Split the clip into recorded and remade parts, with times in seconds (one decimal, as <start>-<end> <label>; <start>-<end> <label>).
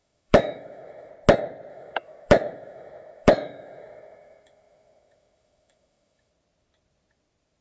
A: 0.0-1.1 remade; 1.1-1.7 recorded; 1.7-6.3 remade; 6.3-7.6 recorded